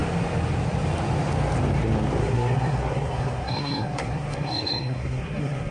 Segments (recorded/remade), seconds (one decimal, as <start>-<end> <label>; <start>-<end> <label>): 0.0-2.2 recorded; 2.2-5.7 remade